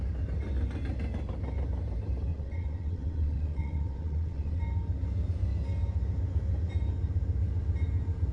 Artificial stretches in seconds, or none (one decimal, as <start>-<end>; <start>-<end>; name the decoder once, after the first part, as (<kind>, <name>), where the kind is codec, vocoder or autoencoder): 2.3-4.6 (vocoder, WaveNeXt)